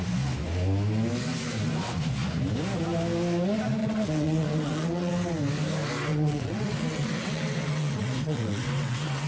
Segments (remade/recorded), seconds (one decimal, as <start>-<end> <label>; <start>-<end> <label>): 0.0-3.8 recorded; 3.8-5.1 remade; 5.1-6.1 recorded; 6.1-9.3 remade